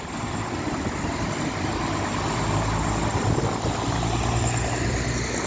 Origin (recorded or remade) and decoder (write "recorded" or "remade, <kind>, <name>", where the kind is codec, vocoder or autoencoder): recorded